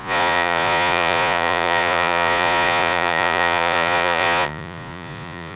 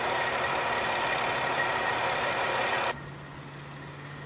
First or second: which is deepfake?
first